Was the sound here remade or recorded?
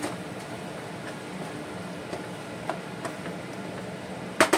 recorded